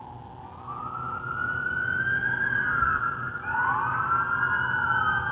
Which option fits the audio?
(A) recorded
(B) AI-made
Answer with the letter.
A